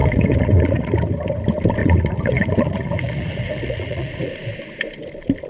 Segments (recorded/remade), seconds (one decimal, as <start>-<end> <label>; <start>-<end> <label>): 0.0-0.9 remade; 0.9-1.8 recorded; 1.8-4.3 remade; 4.3-5.5 recorded